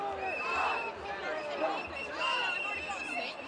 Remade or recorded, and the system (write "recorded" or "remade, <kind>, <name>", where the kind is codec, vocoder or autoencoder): recorded